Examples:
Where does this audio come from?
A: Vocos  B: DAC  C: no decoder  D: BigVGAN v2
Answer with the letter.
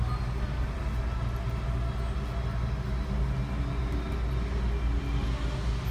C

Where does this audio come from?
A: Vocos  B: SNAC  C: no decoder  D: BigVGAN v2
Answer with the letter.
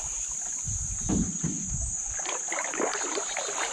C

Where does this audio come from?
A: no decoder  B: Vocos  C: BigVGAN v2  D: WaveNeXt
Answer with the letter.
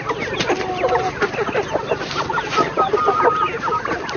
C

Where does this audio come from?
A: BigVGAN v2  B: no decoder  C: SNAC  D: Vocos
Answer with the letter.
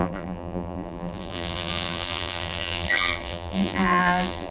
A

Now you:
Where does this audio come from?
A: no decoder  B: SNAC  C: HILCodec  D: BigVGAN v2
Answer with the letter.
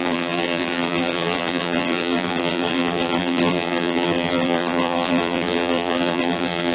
D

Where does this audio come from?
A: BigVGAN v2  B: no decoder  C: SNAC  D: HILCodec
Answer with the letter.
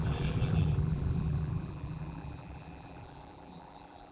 A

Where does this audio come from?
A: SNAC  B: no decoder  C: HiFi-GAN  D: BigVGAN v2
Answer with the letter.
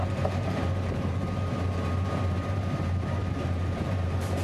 D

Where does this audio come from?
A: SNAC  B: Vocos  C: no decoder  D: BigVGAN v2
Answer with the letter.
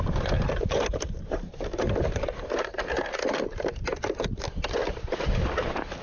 D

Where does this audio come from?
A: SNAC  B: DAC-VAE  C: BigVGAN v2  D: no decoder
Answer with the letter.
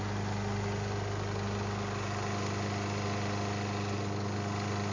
D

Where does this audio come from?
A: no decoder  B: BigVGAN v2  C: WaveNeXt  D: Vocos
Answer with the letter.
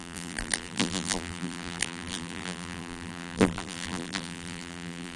B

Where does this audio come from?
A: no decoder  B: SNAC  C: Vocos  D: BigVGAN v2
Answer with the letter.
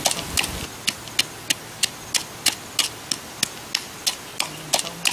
A